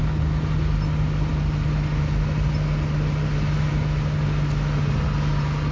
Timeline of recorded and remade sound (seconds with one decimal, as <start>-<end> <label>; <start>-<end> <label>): 0.0-5.7 recorded